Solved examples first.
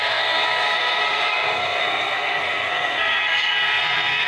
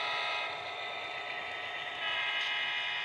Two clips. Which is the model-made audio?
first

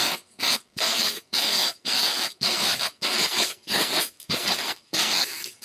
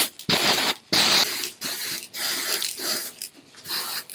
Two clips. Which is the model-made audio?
first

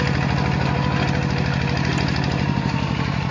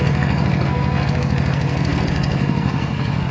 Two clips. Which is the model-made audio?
second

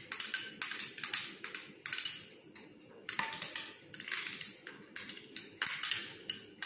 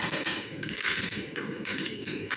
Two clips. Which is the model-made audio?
second